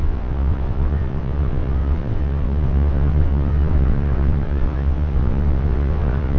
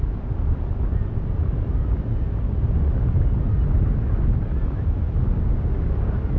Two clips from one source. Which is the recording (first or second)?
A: second